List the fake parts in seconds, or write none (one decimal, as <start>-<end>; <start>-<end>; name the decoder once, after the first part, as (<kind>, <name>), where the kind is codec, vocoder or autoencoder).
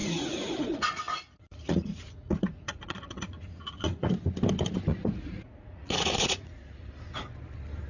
0.0-4.1 (vocoder, Vocos); 4.9-6.9